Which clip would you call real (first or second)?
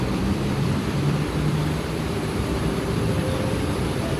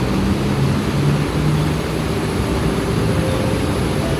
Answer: second